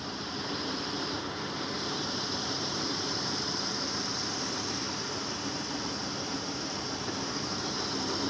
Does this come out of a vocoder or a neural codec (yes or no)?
yes